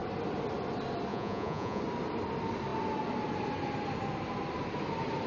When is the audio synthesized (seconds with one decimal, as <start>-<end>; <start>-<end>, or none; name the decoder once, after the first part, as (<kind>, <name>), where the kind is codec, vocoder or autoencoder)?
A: 1.1-1.8 (vocoder, Vocos)